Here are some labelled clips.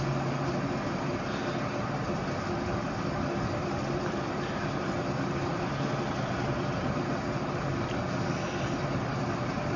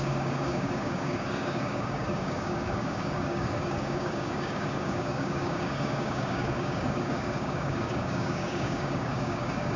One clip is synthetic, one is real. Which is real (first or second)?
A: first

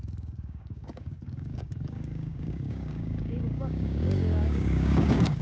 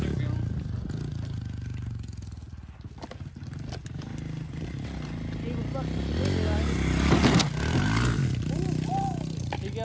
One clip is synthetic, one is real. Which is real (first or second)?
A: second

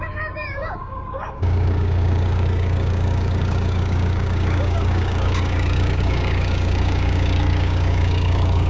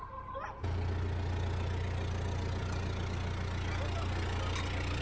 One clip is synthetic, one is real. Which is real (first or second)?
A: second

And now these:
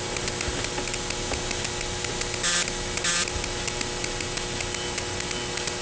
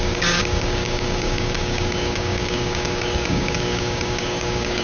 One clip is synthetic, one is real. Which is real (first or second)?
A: first